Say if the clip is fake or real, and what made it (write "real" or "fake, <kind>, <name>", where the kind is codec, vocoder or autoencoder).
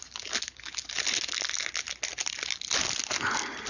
real